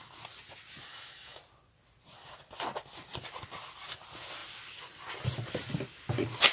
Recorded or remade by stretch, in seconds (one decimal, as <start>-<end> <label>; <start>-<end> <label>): 0.0-0.9 recorded; 0.9-1.4 remade; 1.4-6.5 recorded